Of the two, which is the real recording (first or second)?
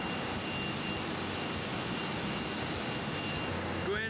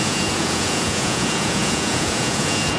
first